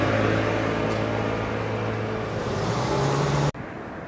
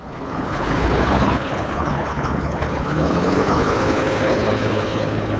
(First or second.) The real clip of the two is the first